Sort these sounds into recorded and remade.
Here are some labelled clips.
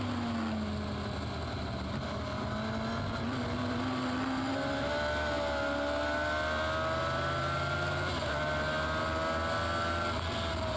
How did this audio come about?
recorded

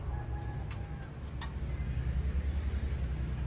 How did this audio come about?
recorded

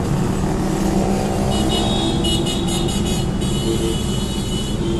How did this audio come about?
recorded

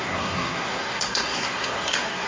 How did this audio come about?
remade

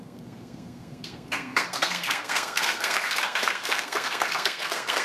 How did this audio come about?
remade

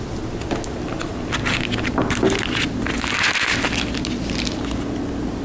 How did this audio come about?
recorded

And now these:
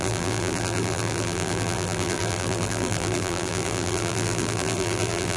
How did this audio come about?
remade